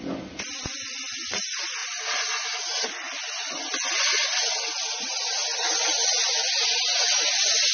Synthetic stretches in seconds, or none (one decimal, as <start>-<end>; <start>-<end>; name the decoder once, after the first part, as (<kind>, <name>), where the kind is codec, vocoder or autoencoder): 1.8-2.9 (vocoder, BigVGAN v2)